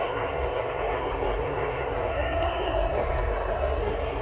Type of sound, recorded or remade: remade